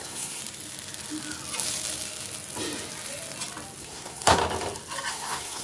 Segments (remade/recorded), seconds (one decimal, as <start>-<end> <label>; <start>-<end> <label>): 0.0-0.4 remade; 0.4-3.8 recorded; 3.8-4.4 remade; 4.4-5.1 recorded; 5.1-5.6 remade